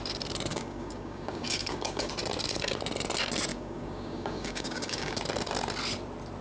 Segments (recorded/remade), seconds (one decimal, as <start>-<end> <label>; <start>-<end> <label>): 0.0-0.5 recorded; 0.5-2.1 remade; 2.1-3.5 recorded; 3.5-5.1 remade; 5.1-6.4 recorded